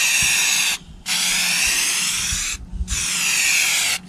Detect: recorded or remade recorded